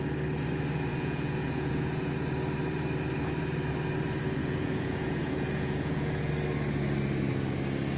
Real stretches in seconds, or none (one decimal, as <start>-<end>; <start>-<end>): 0.0-0.9; 2.1-4.4; 6.3-8.0